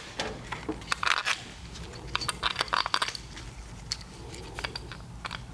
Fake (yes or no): no